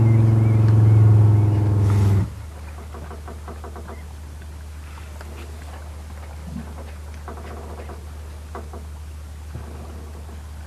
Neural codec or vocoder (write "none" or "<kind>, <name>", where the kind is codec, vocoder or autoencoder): none